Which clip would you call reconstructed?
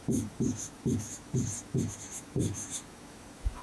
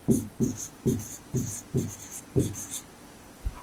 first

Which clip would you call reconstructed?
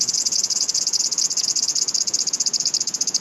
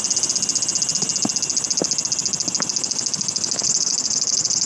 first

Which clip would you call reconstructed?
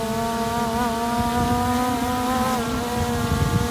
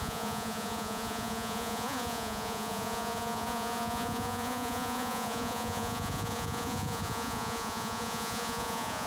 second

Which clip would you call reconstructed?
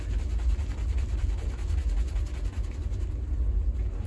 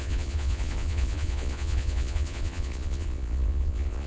second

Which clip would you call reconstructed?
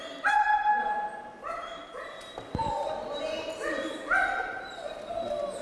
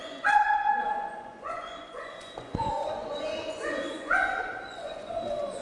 second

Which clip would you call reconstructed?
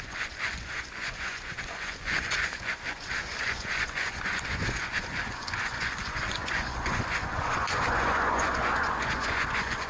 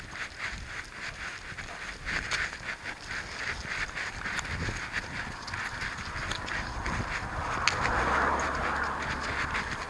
first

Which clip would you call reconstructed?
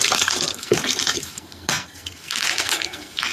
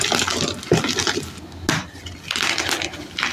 first